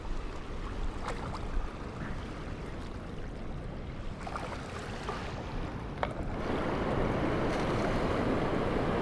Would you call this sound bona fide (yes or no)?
yes